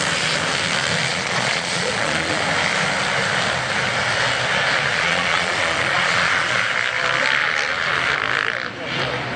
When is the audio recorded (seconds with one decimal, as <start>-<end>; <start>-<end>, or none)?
0.0-1.1; 2.4-4.9; 6.7-9.4